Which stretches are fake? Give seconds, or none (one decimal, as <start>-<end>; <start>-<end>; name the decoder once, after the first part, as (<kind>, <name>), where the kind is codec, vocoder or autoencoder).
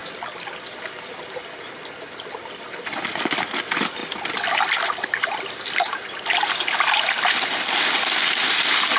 none